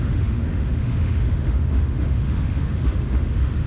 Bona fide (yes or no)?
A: no